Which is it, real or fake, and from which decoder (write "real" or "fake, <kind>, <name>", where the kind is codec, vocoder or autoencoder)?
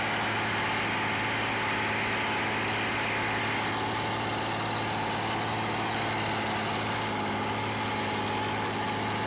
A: real